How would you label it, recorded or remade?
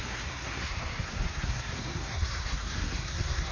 remade